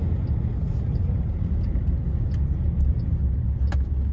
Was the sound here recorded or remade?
recorded